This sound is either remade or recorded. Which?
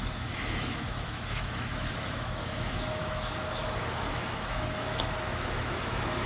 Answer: remade